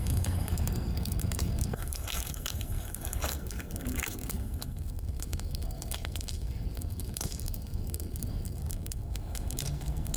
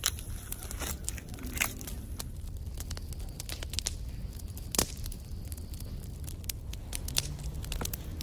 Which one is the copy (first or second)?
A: first